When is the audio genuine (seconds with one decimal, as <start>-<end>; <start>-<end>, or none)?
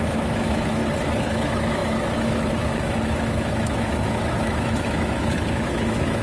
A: 0.8-1.3